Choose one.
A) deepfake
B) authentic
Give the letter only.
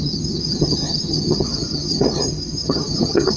A